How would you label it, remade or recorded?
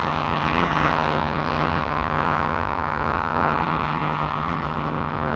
remade